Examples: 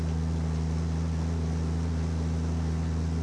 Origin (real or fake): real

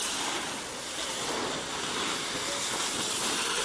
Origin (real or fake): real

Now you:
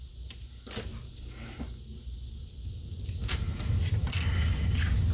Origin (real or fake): real